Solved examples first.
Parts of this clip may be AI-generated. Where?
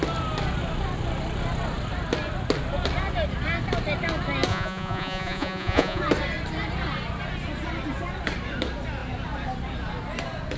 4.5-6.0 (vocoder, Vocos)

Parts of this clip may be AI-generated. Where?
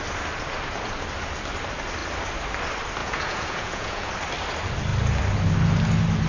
3.0-4.1 (vocoder, Vocos)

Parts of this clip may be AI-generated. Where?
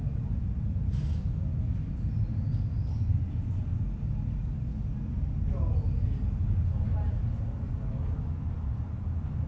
none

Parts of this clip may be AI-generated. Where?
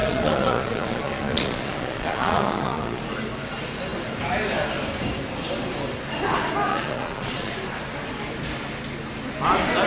0.0-3.0 (vocoder, Vocos); 6.7-7.5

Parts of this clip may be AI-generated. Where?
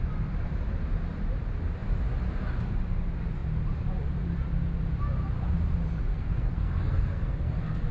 6.1-7.9 (codec, SNAC)